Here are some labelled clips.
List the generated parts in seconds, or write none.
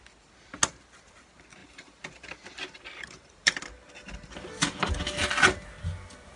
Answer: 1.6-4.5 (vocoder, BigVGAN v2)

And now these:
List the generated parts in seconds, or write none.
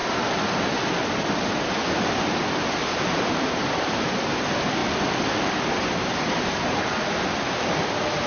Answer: 2.8-4.8 (vocoder, BigVGAN v2); 7.2-8.3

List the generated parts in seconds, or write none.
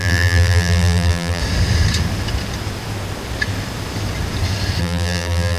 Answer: 0.0-1.4 (vocoder, BigVGAN v2); 4.8-5.6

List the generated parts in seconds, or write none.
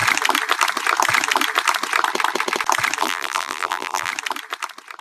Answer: 3.0-4.1 (vocoder, BigVGAN v2)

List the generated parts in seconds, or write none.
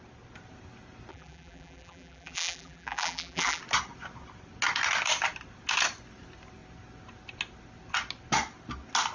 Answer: 1.1-3.6 (vocoder, BigVGAN v2)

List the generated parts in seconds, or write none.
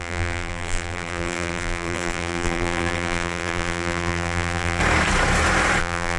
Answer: 0.0-4.8 (vocoder, BigVGAN v2); 5.8-6.2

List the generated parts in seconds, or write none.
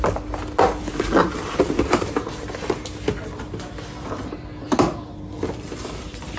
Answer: 1.2-2.9 (vocoder, BigVGAN v2)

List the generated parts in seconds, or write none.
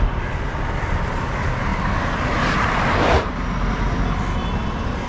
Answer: none